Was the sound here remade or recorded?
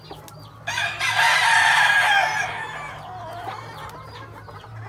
recorded